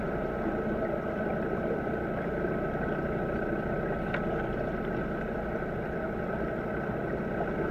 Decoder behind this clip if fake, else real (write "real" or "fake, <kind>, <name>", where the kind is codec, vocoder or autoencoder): real